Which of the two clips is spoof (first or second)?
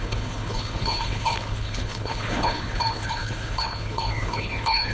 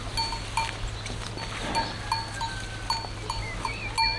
first